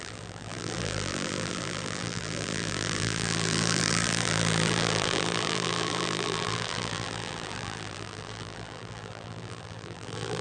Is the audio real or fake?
fake